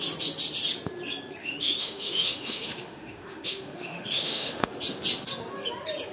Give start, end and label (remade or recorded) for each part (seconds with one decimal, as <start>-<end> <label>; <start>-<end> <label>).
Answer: 0.0-1.4 recorded; 1.4-4.7 remade; 4.7-6.1 recorded